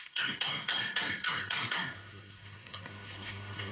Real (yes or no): no